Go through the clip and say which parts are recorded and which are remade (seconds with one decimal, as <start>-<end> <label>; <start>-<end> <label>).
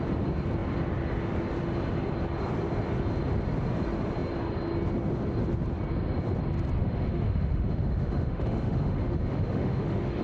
0.0-6.8 recorded; 6.8-10.2 remade